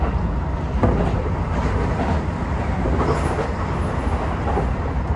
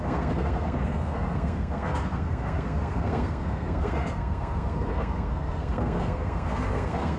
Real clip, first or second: first